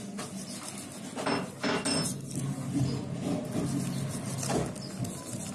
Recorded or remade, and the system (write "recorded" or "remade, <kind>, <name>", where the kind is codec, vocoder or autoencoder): recorded